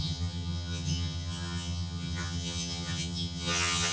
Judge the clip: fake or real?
fake